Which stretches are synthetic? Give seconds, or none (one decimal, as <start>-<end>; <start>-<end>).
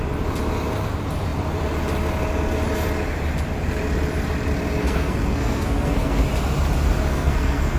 4.8-6.2; 7.1-7.8